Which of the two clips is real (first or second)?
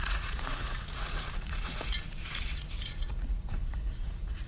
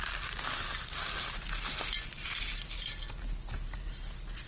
second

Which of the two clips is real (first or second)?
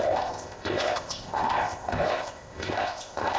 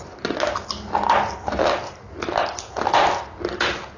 second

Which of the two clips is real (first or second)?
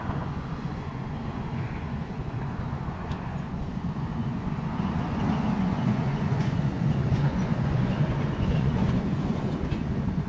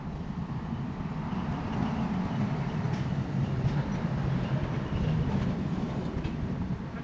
second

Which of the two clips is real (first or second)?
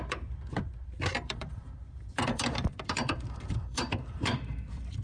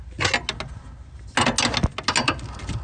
second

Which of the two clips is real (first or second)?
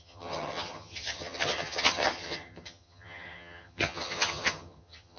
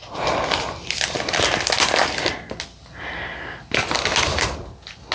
second